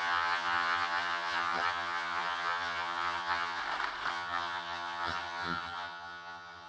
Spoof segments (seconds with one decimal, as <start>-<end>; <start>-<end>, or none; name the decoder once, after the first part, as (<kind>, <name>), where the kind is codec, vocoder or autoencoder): 0.0-3.6 (vocoder, HiFi-GAN); 4.1-6.7